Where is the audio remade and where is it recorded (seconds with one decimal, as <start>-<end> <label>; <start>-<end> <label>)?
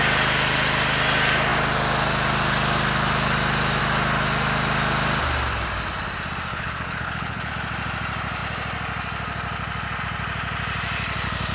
0.0-6.5 recorded; 6.5-7.5 remade; 7.5-11.5 recorded